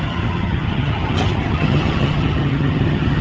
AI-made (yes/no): yes